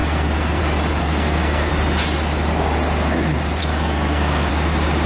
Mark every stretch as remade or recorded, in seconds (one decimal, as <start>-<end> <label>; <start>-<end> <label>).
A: 0.0-0.6 remade; 0.6-1.0 recorded; 1.0-1.7 remade; 1.7-3.6 recorded; 3.6-4.5 remade; 4.5-5.1 recorded